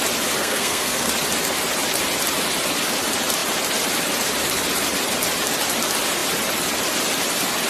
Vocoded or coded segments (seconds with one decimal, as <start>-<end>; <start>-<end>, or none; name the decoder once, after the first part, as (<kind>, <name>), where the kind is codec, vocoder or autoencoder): 0.4-1.1 (codec, SNAC)